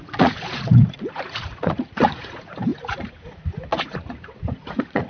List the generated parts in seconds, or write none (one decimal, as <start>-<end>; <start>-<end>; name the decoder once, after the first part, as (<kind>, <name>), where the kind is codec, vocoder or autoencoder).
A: 0.0-5.1 (vocoder, Vocos)